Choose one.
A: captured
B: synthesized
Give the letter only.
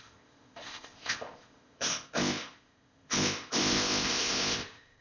B